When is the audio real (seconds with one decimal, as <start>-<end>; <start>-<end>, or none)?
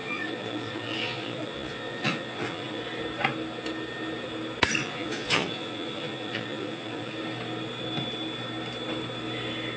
2.8-4.8; 7.1-9.8